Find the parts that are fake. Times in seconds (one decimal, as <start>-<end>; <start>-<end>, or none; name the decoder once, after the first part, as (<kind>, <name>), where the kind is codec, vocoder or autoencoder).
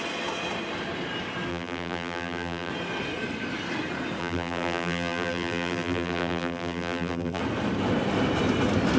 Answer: 1.5-2.7 (vocoder, BigVGAN v2); 4.2-7.4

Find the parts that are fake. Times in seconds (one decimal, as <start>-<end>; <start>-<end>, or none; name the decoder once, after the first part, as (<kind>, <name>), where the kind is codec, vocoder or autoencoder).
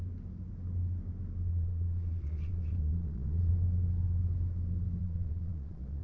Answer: 1.5-3.5 (vocoder, Vocos); 5.0-6.0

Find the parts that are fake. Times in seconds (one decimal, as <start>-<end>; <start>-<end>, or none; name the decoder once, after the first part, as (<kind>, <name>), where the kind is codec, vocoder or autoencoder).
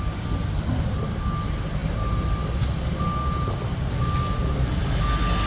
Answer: none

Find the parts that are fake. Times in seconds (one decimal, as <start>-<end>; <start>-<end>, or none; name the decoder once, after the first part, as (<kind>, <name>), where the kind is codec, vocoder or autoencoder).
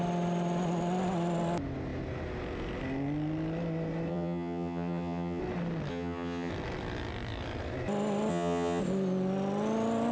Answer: 4.1-5.4 (vocoder, HiFi-GAN); 5.9-6.5; 8.3-8.8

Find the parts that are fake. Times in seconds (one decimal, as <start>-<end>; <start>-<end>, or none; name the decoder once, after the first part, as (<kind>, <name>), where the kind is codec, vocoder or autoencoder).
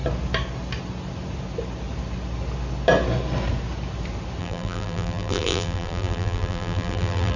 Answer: 4.4-7.4 (vocoder, BigVGAN v2)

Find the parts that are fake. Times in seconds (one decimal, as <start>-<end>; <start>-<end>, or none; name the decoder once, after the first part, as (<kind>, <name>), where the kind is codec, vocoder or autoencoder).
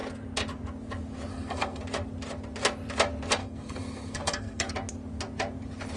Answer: 1.3-1.8 (codec, SNAC); 3.4-4.7